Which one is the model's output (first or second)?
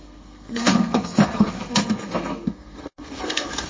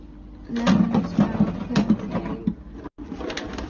first